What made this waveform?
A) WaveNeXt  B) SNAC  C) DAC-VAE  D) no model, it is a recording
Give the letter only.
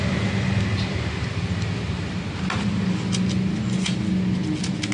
D